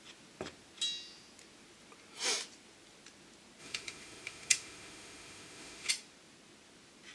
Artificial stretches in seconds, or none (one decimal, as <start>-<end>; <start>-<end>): 3.6-5.9